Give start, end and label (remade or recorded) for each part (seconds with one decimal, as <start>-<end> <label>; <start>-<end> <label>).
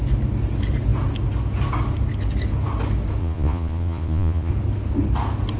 0.0-3.2 recorded; 3.2-4.5 remade; 4.5-5.6 recorded